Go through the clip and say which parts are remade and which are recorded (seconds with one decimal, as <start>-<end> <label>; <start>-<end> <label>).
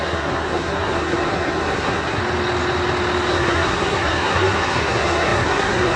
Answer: 0.0-2.2 remade; 2.2-3.3 recorded; 3.3-6.0 remade